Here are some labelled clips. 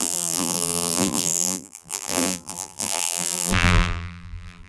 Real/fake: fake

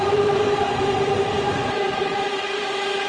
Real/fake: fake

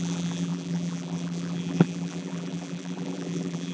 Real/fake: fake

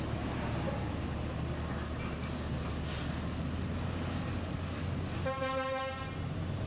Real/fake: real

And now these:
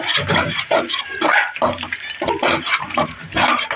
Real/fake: fake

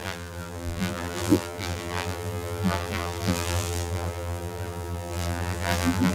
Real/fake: fake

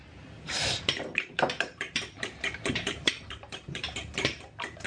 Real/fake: fake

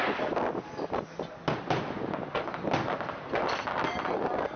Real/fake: real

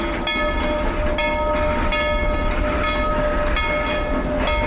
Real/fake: real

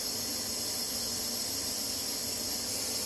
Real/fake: real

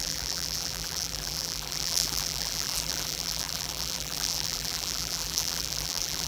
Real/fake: fake